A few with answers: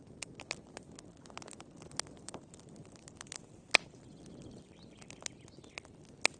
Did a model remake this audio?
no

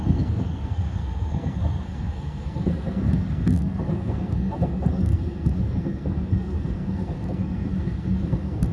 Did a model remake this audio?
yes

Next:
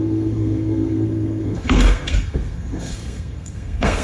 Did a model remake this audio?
yes